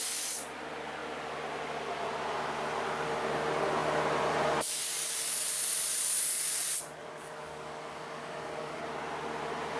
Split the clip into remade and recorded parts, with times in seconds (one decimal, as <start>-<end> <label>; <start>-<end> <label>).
0.0-7.0 recorded; 7.0-8.8 remade; 8.8-9.8 recorded